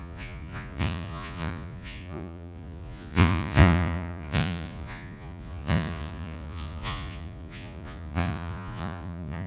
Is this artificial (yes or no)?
yes